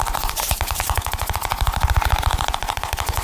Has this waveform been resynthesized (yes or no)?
yes